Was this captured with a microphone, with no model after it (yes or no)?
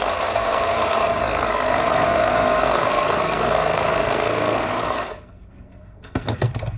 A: no